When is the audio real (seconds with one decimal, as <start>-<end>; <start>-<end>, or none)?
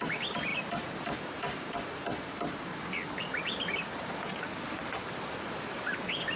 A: 0.5-1.6; 2.7-5.0